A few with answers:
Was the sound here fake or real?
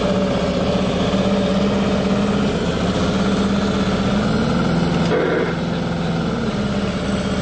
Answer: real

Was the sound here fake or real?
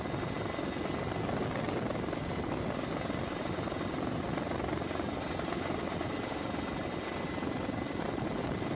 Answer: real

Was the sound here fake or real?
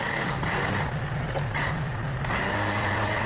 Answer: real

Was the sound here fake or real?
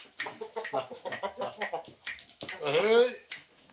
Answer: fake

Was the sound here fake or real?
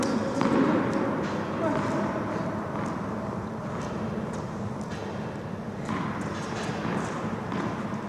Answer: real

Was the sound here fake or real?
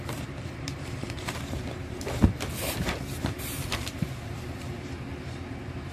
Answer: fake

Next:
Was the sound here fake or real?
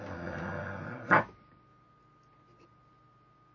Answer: real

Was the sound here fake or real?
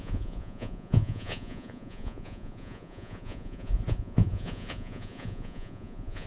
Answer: fake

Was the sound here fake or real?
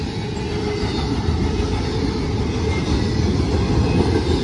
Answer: real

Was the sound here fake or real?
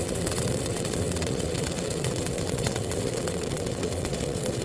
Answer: fake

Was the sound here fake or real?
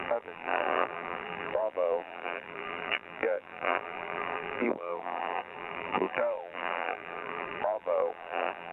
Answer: fake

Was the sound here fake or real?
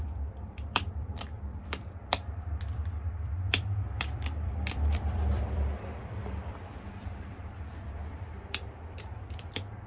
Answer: fake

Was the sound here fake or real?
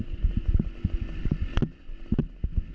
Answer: real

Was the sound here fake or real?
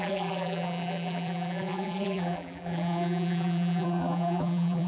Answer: fake